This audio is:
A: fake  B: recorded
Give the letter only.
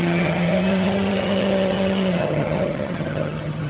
A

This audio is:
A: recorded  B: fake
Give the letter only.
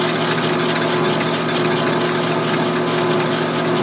A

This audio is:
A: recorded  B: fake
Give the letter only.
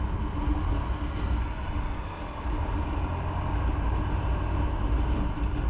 A